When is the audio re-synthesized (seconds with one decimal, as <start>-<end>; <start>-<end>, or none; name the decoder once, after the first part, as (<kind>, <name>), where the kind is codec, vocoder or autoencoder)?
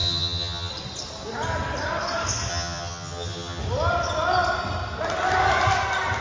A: 0.0-0.7 (vocoder, HiFi-GAN); 2.5-3.6